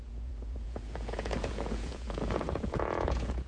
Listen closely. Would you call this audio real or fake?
fake